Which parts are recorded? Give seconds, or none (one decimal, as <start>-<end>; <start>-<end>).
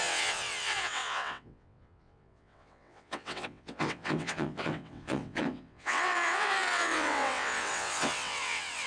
none